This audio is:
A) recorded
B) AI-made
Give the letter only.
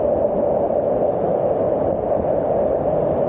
A